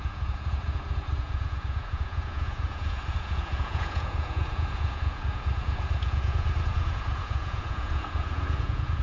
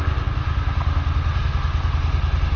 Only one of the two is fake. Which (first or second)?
first